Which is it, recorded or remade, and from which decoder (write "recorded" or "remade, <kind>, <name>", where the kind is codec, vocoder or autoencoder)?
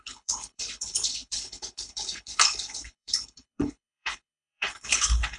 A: remade, codec, HILCodec